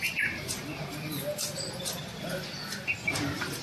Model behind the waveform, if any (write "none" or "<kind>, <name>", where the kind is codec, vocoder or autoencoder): none